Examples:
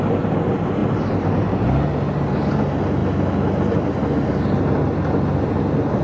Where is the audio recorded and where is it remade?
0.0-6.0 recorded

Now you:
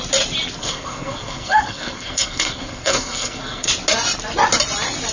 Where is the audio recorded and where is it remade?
0.0-0.6 recorded; 0.6-3.7 remade; 3.7-5.1 recorded

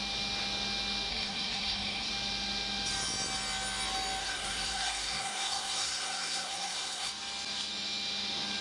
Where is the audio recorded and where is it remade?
0.0-1.1 recorded; 1.1-2.1 remade; 2.1-4.2 recorded; 4.2-7.1 remade; 7.1-8.6 recorded

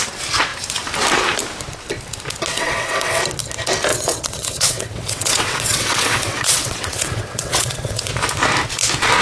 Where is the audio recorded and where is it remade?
0.0-2.5 recorded; 2.5-3.2 remade; 3.2-3.9 recorded; 3.9-8.1 remade; 8.1-9.2 recorded

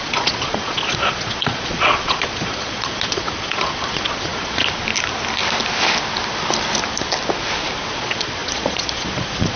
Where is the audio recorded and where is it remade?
0.0-4.6 remade; 4.6-7.9 recorded; 7.9-9.6 remade

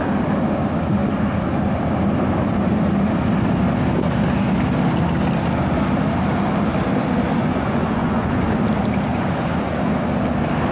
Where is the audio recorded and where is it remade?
0.0-7.4 recorded; 7.4-8.4 remade; 8.4-9.1 recorded; 9.1-9.9 remade; 9.9-10.7 recorded

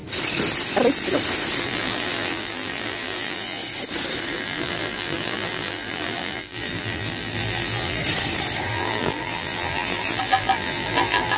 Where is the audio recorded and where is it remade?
0.0-1.6 recorded; 1.6-3.6 remade; 3.6-4.3 recorded; 4.3-8.0 remade; 8.0-8.7 recorded; 8.7-11.4 remade

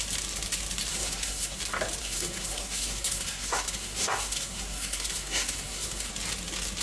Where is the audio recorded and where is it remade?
0.0-0.9 recorded; 0.9-1.6 remade; 1.6-2.0 recorded; 2.0-6.1 remade; 6.1-6.8 recorded